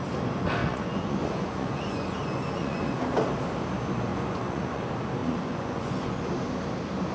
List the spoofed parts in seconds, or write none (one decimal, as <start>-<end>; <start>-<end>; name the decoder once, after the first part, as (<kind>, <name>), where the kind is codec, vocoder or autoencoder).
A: 0.6-3.0 (vocoder, Vocos); 4.1-4.8; 5.2-6.2